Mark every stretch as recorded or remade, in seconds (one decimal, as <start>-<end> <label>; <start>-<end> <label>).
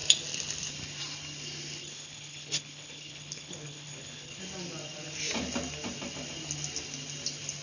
0.0-1.8 recorded; 1.8-4.4 remade; 4.4-7.6 recorded